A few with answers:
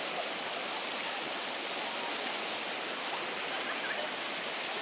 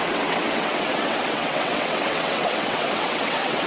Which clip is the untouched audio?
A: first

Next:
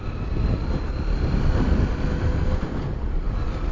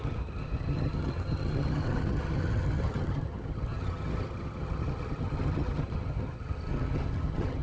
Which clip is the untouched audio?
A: first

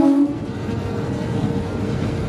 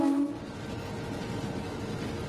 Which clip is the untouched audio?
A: second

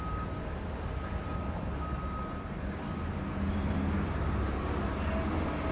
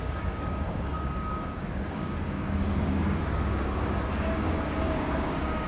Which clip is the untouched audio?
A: first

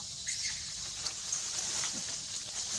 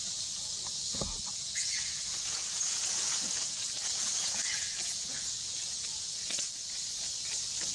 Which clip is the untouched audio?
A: first